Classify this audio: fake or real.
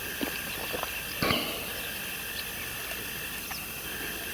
real